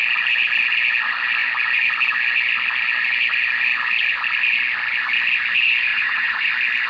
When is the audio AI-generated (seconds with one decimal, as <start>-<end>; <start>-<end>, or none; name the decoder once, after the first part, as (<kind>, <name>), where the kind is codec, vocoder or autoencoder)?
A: 5.9-6.5 (vocoder, Vocos)